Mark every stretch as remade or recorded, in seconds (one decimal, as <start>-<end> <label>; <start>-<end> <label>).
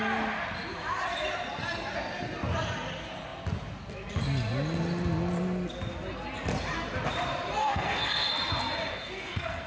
0.0-7.6 recorded; 7.6-8.3 remade; 8.3-8.9 recorded; 8.9-9.7 remade